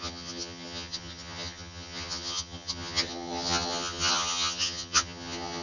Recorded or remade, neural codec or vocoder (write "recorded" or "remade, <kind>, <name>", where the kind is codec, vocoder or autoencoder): remade, vocoder, HiFi-GAN